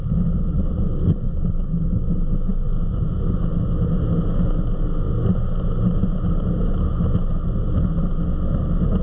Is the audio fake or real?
real